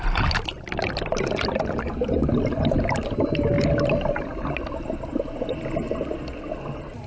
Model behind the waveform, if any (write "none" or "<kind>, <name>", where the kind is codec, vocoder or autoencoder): none